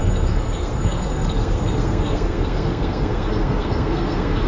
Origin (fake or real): fake